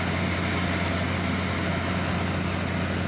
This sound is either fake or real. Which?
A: real